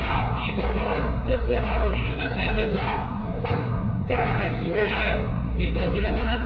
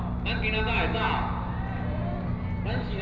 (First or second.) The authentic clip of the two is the second